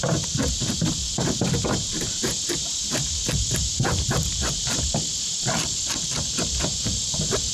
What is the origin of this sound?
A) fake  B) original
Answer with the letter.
A